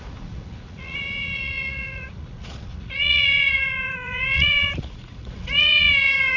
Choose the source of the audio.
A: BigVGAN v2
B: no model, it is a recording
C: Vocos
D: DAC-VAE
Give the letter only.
C